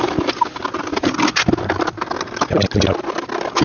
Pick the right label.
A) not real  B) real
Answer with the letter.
B